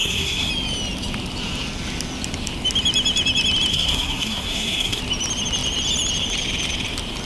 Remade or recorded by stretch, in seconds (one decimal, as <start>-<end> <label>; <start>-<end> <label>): 0.0-0.5 remade; 0.5-3.7 recorded; 3.7-5.0 remade; 5.0-7.2 recorded